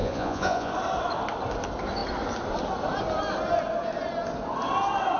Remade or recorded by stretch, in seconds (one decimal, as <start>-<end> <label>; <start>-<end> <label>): 0.0-0.7 remade; 0.7-5.2 recorded